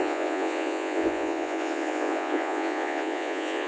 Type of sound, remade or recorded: remade